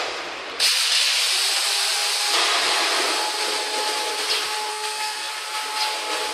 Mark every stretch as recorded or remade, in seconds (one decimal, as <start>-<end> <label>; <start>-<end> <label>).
0.0-4.7 recorded; 4.7-5.3 remade; 5.3-6.3 recorded